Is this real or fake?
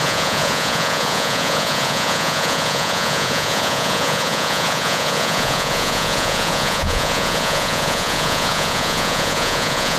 fake